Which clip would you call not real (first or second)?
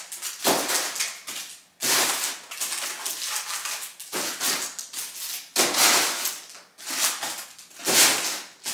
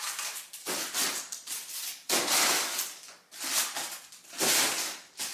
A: second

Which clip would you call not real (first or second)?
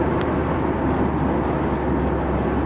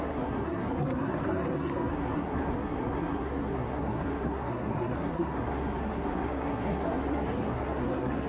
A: second